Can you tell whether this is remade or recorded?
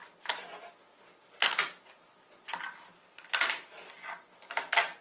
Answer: recorded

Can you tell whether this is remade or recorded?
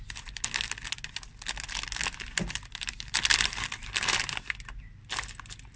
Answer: recorded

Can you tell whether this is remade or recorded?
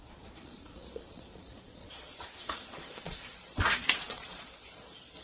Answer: remade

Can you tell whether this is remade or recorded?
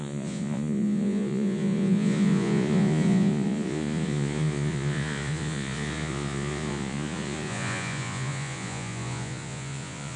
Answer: remade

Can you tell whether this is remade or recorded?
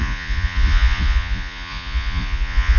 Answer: remade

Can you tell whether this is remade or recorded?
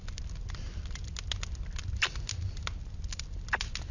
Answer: recorded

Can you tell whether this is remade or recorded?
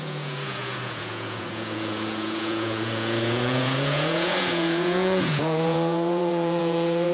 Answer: remade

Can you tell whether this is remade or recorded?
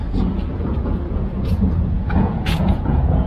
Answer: remade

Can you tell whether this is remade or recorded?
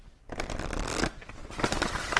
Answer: recorded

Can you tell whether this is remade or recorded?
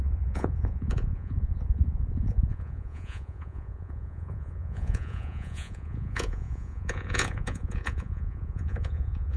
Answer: remade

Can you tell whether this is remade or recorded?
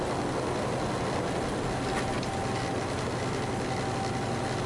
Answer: recorded